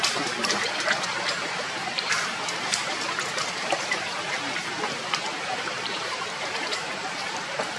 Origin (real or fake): fake